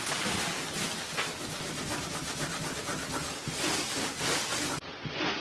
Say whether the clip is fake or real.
real